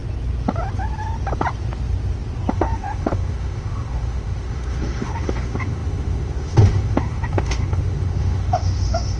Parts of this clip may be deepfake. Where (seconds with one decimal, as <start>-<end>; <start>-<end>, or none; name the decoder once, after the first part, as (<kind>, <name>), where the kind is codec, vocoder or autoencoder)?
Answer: 2.5-9.2 (autoencoder, DAC-VAE)

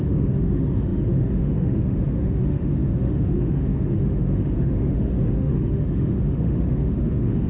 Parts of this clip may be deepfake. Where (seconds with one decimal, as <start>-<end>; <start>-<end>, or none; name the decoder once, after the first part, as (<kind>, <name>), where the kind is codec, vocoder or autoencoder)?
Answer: 0.0-7.5 (autoencoder, DAC-VAE)

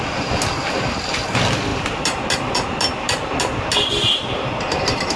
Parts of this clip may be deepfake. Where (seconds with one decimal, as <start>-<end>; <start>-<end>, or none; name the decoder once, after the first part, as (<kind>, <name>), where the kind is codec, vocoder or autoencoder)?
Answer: none

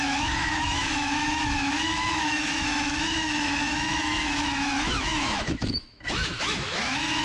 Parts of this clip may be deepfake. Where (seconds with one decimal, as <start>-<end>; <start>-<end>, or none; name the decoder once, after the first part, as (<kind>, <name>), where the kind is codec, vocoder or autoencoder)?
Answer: 0.0-7.2 (autoencoder, DAC-VAE)

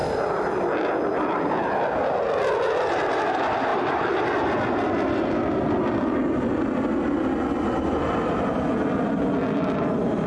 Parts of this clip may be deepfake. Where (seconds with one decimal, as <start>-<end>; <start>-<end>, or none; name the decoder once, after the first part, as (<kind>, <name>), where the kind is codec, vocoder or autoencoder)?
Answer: none

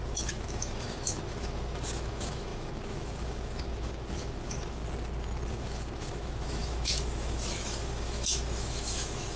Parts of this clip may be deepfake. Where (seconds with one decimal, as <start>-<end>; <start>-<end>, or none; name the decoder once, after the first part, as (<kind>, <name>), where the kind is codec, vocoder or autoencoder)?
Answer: 0.0-4.8 (autoencoder, DAC-VAE); 5.5-9.4

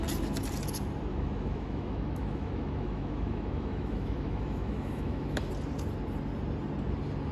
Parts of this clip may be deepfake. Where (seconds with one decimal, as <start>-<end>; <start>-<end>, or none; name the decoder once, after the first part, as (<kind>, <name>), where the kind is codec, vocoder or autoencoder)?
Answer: 1.1-5.5 (autoencoder, DAC-VAE)

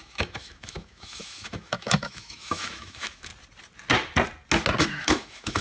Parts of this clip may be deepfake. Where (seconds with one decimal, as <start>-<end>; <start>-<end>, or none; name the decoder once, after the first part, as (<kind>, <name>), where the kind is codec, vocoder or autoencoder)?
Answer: 0.0-3.3 (autoencoder, DAC-VAE); 4.8-5.6